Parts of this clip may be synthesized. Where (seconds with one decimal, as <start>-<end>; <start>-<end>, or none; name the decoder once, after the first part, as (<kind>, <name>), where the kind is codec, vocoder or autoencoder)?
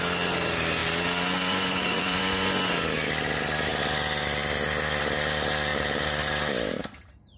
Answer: 0.8-2.2 (vocoder, BigVGAN v2); 5.7-6.8